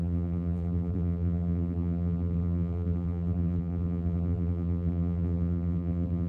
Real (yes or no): no